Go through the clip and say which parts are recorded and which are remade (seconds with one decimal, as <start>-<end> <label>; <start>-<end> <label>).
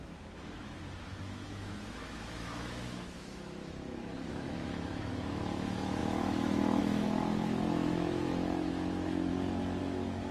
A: 0.0-9.3 remade; 9.3-9.8 recorded; 9.8-10.3 remade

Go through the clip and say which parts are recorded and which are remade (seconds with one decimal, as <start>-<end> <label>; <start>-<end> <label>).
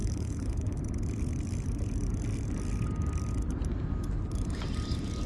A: 0.0-0.8 remade; 0.8-5.3 recorded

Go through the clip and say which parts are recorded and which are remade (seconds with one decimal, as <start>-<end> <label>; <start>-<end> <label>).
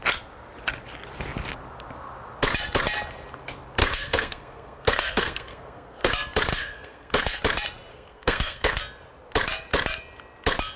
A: 0.0-3.8 recorded; 3.8-6.1 remade; 6.1-6.5 recorded; 6.5-7.4 remade; 7.4-7.9 recorded; 7.9-8.8 remade; 8.8-10.8 recorded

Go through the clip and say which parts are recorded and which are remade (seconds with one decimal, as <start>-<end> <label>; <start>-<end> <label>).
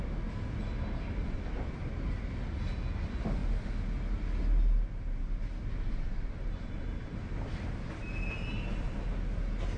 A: 0.0-9.8 recorded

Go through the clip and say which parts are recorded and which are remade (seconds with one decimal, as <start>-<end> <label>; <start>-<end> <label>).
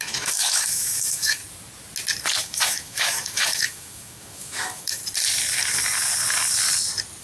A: 0.0-1.4 remade; 1.4-2.4 recorded; 2.4-5.0 remade; 5.0-7.2 recorded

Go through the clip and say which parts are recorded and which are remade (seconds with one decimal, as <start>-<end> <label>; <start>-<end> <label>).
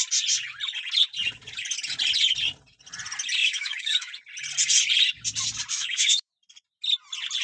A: 0.0-3.4 recorded; 3.4-4.1 remade; 4.1-5.7 recorded; 5.7-6.3 remade; 6.3-7.4 recorded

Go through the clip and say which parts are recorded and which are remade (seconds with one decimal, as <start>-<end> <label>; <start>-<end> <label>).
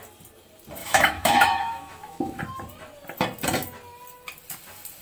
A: 0.0-0.8 recorded; 0.8-2.4 remade; 2.4-5.0 recorded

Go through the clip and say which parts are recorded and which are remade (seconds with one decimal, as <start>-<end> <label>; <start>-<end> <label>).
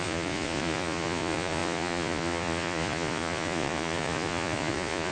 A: 0.0-5.1 remade